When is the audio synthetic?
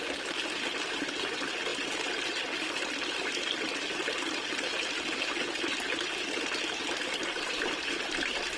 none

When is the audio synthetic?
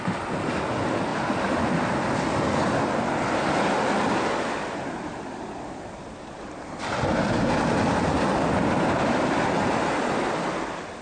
none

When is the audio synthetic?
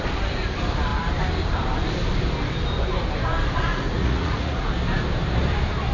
3.7-4.7 (vocoder, Vocos)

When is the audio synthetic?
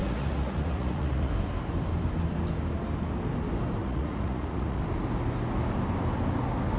0.0-1.3 (vocoder, Vocos); 3.8-4.8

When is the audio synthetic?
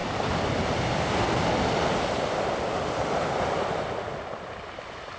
none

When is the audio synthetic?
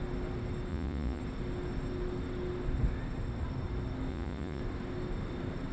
0.7-1.2 (vocoder, Vocos); 4.1-4.6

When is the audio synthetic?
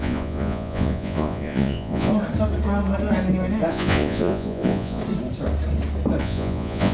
0.0-2.1 (vocoder, Vocos); 3.7-5.0; 6.2-6.9